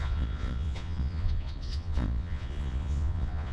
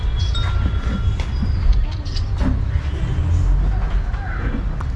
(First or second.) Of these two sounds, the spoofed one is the first